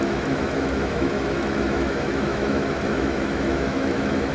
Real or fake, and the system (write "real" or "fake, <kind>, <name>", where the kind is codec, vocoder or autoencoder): fake, autoencoder, DAC-VAE